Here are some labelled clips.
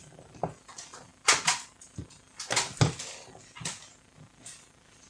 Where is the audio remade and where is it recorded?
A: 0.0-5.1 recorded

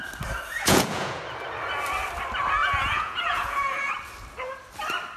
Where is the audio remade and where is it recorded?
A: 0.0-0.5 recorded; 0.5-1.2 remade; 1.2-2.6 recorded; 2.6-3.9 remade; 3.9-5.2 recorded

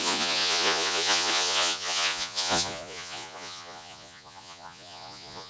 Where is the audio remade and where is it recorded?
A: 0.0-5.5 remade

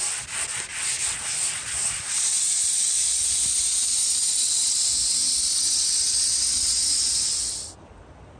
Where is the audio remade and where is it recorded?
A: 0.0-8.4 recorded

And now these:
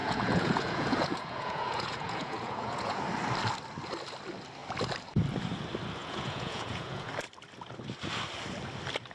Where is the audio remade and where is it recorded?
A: 0.0-3.0 remade; 3.0-6.0 recorded; 6.0-7.1 remade; 7.1-9.1 recorded

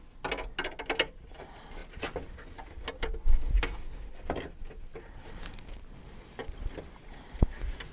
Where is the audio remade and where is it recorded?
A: 0.0-7.9 recorded